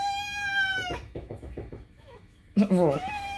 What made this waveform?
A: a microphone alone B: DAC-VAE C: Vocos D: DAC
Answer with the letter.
B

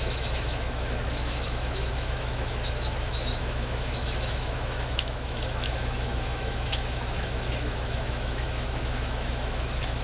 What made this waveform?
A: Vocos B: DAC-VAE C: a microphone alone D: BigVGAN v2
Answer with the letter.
B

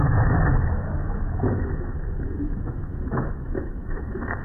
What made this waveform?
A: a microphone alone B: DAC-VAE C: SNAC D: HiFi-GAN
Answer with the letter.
B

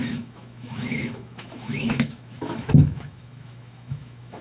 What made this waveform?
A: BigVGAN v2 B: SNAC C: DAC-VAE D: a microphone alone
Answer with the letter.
C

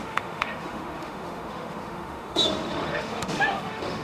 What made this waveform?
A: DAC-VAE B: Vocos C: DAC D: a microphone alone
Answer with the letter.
A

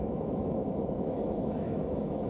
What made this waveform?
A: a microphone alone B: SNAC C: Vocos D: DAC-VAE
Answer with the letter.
D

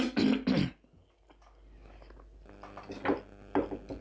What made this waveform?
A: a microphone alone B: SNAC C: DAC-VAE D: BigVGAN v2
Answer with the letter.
A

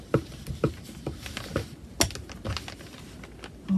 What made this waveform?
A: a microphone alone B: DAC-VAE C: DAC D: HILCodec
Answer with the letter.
A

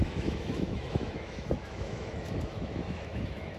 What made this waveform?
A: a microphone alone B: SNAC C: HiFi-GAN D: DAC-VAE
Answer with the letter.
D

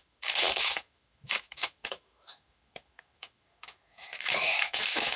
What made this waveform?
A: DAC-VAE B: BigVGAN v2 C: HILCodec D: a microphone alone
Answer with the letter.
A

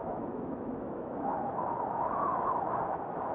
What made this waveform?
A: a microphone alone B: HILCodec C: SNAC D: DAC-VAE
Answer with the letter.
D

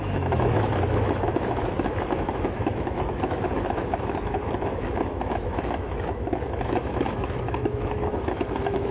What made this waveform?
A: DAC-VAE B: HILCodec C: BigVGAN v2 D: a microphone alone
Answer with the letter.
A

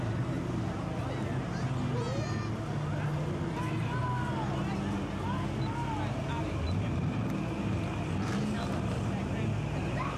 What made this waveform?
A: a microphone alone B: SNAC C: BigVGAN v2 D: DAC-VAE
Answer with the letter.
A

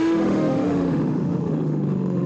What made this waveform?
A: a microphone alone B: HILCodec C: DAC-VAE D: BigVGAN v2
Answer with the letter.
C